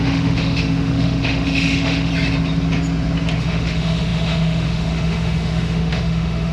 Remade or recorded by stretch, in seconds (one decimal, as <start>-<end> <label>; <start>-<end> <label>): 0.0-2.1 remade; 2.1-3.4 recorded; 3.4-6.5 remade